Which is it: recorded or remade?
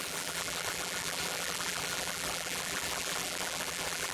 remade